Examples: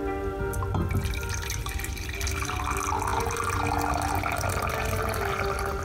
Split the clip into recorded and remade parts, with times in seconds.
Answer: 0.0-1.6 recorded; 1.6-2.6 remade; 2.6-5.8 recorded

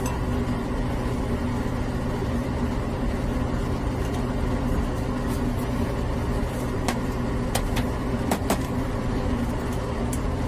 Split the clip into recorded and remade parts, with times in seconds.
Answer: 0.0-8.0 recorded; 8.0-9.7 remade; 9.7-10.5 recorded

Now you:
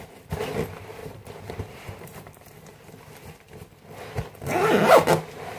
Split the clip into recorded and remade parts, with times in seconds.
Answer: 0.0-1.0 recorded; 1.0-2.9 remade; 2.9-5.6 recorded

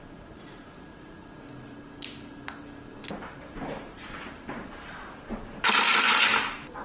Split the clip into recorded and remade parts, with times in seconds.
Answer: 0.0-1.2 remade; 1.2-2.6 recorded; 2.6-6.8 remade

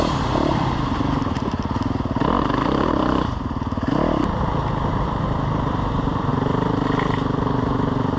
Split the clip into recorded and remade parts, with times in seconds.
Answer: 0.0-6.3 remade; 6.3-8.2 recorded

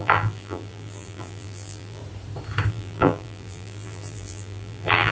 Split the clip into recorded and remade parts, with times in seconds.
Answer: 0.0-2.0 remade; 2.0-2.7 recorded; 2.7-5.1 remade

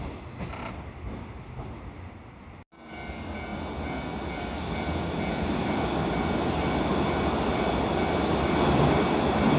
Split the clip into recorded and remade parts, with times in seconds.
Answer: 0.0-9.6 recorded